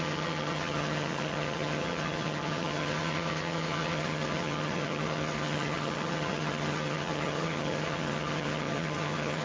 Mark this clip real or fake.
fake